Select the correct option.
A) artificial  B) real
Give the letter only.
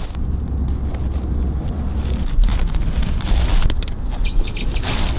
B